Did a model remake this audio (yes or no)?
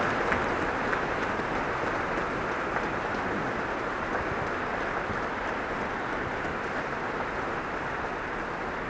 no